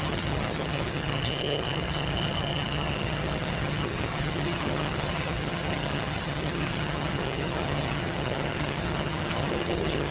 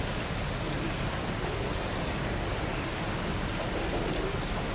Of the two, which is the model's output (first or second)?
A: first